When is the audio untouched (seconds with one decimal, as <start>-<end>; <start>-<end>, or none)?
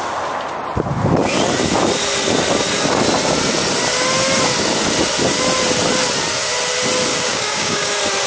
0.0-7.1; 7.9-8.3